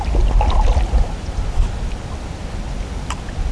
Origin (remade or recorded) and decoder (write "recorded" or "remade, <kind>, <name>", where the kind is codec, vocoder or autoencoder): recorded